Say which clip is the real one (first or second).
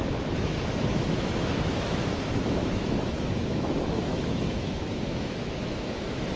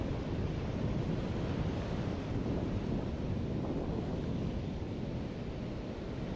second